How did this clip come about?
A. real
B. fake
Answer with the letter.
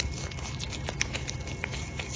A